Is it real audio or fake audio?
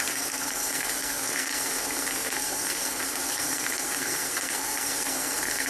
fake